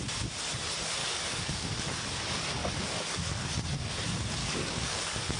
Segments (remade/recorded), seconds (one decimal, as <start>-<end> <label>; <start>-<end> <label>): 0.0-1.0 recorded; 1.0-1.9 remade; 1.9-2.6 recorded; 2.6-3.4 remade; 3.4-4.4 recorded; 4.4-5.4 remade